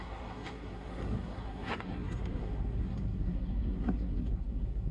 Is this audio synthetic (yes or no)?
yes